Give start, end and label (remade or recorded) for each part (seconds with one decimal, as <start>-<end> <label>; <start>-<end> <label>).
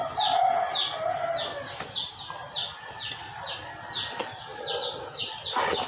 0.0-5.9 recorded